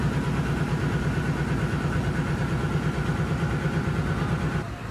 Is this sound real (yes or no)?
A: yes